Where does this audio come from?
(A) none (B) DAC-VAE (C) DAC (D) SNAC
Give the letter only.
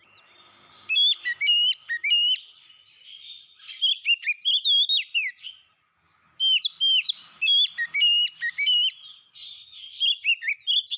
A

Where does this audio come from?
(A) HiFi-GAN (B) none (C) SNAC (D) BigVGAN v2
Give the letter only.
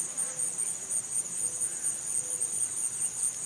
B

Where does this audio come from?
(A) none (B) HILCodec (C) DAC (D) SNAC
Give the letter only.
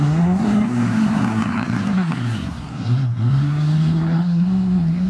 D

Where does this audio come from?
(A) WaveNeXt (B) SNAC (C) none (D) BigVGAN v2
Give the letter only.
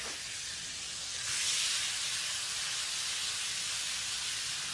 C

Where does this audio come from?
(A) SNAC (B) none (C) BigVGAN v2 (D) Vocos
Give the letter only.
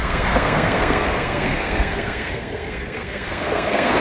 A